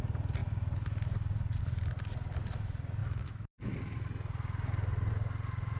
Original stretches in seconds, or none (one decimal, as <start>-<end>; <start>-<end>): 0.0-3.0; 3.7-5.8